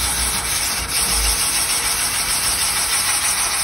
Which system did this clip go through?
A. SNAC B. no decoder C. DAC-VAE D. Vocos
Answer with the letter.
B